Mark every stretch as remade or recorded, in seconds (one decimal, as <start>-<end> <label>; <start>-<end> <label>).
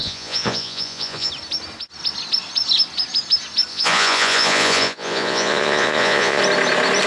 0.0-1.3 remade; 1.3-3.7 recorded; 3.7-6.4 remade; 6.4-7.1 recorded